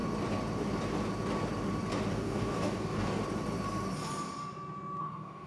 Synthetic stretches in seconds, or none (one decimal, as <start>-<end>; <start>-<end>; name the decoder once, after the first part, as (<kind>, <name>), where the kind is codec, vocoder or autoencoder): 2.1-3.2 (codec, DAC); 5.0-5.5